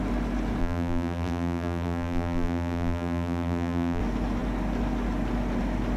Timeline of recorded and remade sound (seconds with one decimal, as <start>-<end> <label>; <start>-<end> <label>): 0.0-0.6 recorded; 0.6-4.0 remade; 4.0-6.0 recorded